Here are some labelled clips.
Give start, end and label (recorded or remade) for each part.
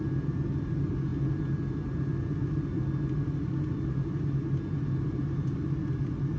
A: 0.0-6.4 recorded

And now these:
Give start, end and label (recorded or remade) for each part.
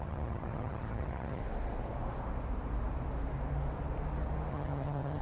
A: 0.0-1.4 remade; 1.4-4.5 recorded; 4.5-5.2 remade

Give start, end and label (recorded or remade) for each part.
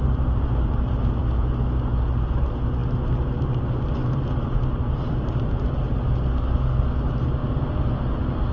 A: 0.0-1.2 remade; 1.2-2.3 recorded; 2.3-7.4 remade; 7.4-8.5 recorded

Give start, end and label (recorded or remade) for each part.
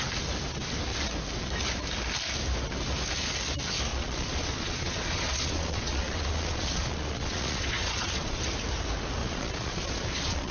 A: 0.0-3.9 recorded; 3.9-8.4 remade; 8.4-9.2 recorded; 9.2-10.5 remade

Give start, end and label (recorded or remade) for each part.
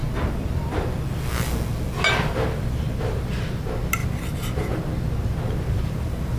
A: 0.0-1.3 remade; 1.3-6.4 recorded